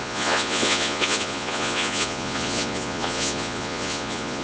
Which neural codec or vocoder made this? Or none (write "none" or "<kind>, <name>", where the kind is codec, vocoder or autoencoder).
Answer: vocoder, Vocos